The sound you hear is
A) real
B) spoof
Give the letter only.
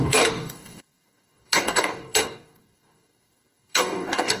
B